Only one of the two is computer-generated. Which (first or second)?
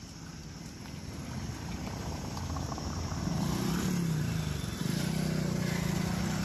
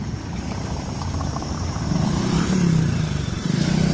second